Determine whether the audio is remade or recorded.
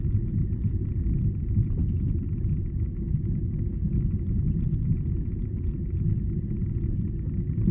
recorded